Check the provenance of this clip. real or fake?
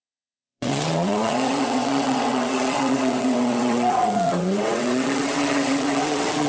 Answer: fake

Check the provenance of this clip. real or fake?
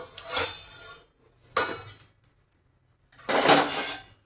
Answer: real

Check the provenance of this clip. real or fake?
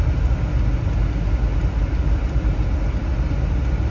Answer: real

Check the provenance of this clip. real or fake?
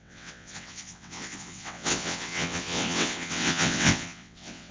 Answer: fake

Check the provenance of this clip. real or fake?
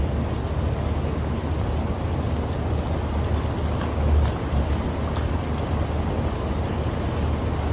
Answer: real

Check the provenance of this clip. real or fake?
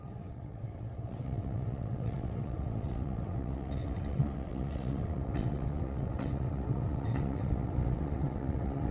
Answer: fake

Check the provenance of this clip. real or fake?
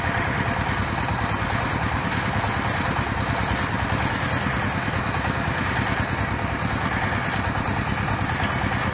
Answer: real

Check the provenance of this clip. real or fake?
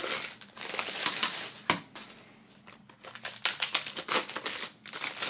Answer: real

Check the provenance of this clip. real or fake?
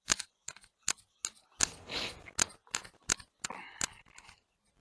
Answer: real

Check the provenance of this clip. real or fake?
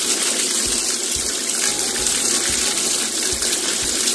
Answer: real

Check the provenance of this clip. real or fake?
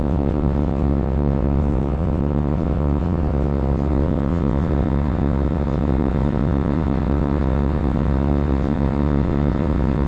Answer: fake